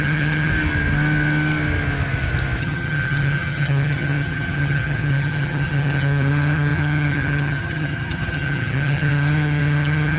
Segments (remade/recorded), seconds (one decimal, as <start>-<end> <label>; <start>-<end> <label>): 0.0-0.5 remade; 0.5-2.6 recorded; 2.6-10.2 remade